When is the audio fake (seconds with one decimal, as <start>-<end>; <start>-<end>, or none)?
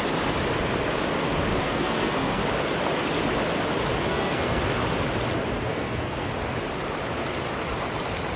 1.5-2.4; 4.0-4.6; 5.7-6.3